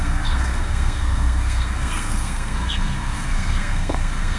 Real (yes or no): no